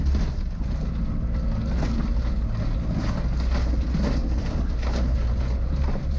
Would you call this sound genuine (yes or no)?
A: yes